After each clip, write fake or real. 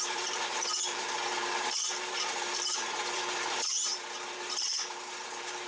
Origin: fake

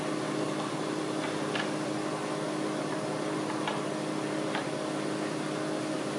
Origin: real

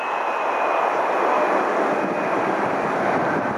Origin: real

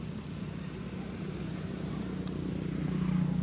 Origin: real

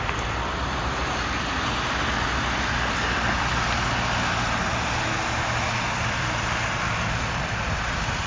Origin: real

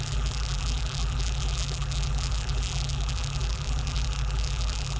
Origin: fake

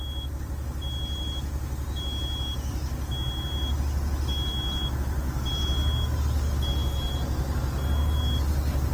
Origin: real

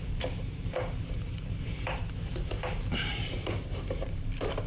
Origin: fake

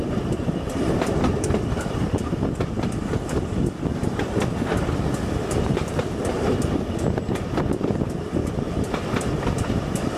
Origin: real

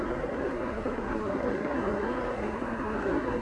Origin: fake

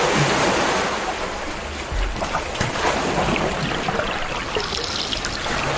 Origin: real